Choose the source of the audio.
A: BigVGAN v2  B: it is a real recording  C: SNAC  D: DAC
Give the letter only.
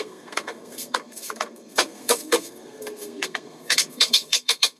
C